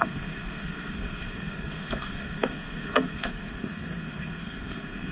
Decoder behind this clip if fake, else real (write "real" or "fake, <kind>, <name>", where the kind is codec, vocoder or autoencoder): fake, codec, SNAC